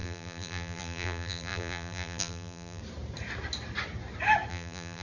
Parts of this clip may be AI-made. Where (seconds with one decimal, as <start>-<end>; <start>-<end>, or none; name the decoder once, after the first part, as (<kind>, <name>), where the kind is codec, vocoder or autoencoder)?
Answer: 0.0-2.8 (vocoder, BigVGAN v2); 4.5-5.0